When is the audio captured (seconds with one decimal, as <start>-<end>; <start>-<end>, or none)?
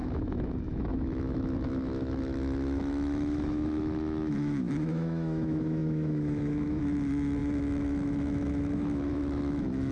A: none